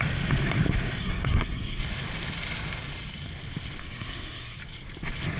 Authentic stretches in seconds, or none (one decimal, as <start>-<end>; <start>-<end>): 0.0-1.0; 1.8-3.8; 4.6-5.4